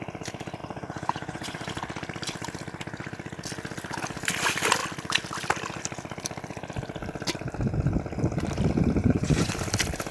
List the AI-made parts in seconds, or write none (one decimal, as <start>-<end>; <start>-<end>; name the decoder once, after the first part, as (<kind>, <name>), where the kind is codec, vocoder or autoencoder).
0.6-1.7 (vocoder, Vocos); 9.0-9.5